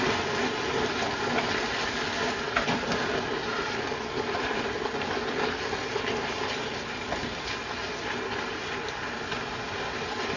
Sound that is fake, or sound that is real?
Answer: real